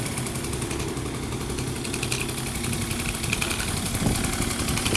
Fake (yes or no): no